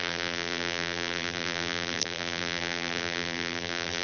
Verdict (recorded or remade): remade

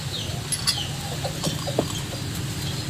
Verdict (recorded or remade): recorded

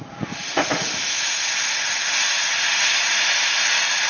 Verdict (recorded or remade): recorded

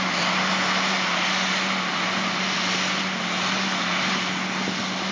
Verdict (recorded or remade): recorded